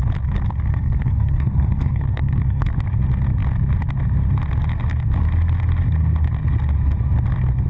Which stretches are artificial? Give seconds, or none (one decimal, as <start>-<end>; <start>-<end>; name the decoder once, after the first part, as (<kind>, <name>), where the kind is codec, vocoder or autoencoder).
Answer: 0.7-2.7 (codec, SNAC)